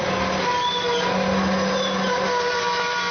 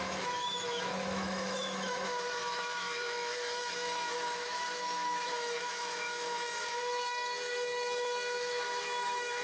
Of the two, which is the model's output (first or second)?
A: second